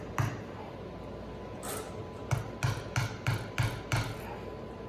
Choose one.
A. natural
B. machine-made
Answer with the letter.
A